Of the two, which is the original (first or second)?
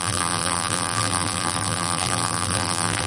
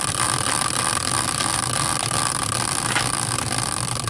second